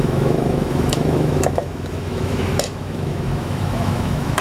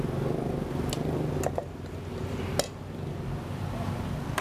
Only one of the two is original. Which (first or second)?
second